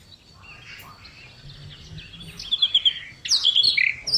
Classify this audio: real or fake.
real